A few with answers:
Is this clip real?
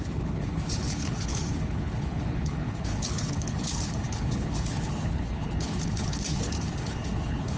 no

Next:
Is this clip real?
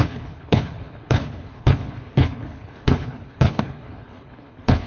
no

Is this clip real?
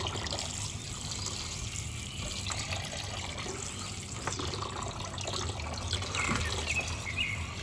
yes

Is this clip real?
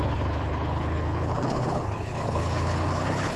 no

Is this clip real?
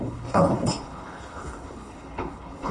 no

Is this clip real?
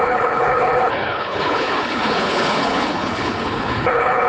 no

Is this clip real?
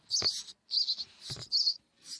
yes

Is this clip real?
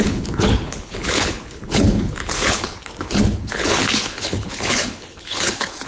no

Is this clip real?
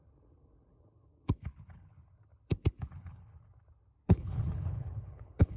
no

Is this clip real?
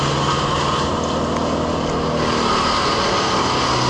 yes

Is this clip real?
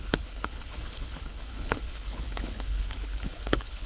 no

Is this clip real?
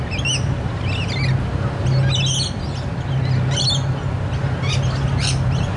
yes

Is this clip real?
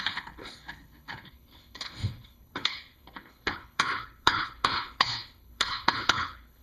no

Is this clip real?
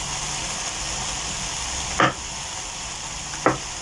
yes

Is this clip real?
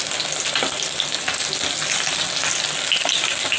yes